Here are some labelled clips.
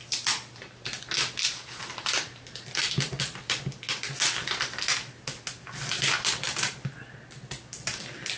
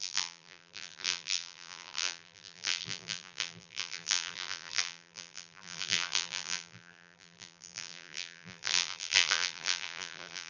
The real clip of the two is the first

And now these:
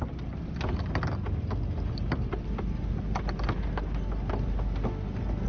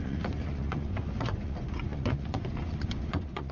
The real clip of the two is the first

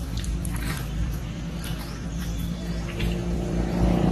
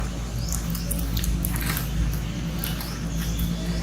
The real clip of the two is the second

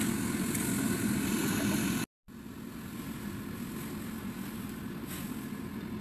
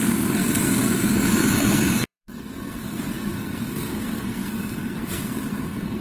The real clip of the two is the first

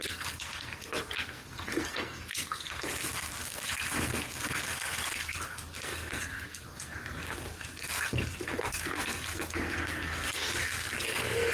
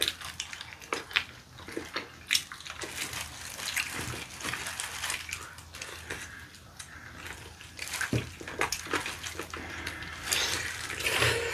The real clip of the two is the second